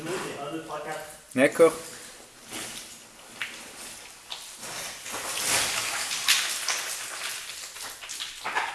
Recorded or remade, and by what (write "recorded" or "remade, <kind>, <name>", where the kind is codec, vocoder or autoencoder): recorded